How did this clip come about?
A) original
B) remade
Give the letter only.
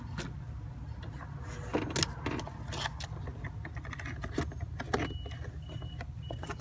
A